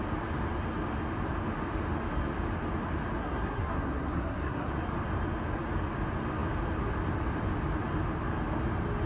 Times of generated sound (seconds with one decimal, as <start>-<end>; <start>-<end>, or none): 3.2-4.7